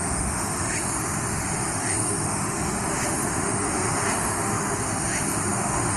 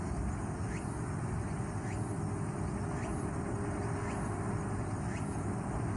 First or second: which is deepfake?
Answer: first